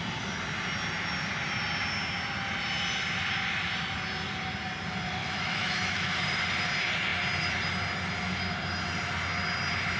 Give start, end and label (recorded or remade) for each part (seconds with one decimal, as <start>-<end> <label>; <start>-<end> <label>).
0.0-5.2 recorded; 5.2-6.2 remade; 6.2-10.0 recorded